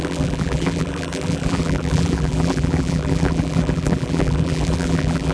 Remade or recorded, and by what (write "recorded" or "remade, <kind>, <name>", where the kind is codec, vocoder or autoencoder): remade, vocoder, BigVGAN v2